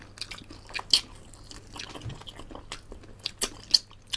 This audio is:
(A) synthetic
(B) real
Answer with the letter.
B